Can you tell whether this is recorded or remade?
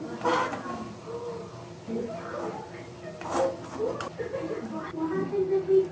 recorded